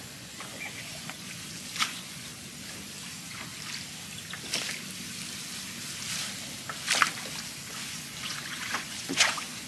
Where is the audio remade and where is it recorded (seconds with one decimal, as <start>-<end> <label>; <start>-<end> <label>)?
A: 0.0-2.3 remade; 2.3-3.1 recorded; 3.1-3.5 remade; 3.5-7.7 recorded; 7.7-9.7 remade